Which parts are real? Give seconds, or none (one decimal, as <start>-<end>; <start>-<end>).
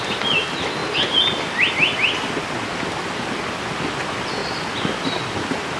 0.0-5.8